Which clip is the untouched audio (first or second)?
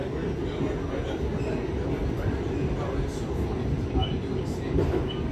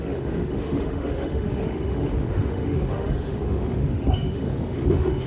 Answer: first